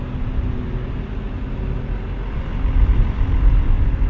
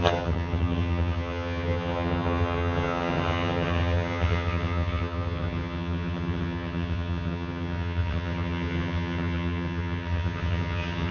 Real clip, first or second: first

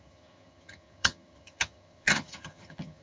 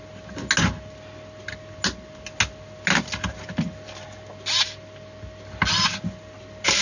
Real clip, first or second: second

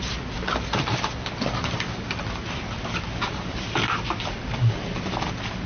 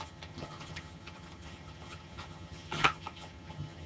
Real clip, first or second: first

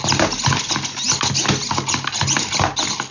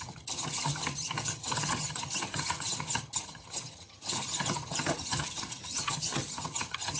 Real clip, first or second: first